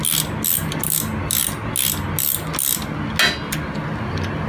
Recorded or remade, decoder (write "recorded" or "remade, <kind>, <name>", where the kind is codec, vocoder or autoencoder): recorded